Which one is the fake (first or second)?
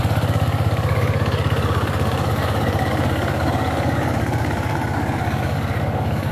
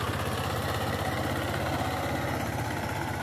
first